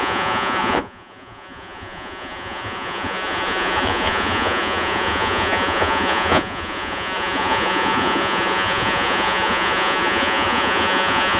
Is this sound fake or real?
fake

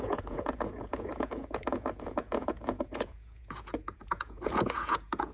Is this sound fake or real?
fake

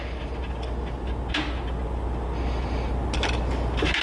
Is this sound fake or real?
real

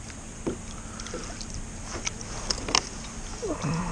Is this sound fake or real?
real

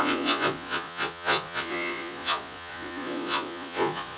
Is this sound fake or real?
fake